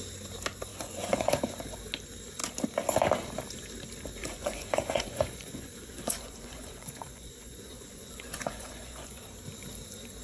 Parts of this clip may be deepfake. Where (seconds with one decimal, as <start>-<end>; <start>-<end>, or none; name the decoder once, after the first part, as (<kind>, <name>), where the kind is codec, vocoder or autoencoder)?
0.7-1.3 (vocoder, Vocos); 4.2-9.3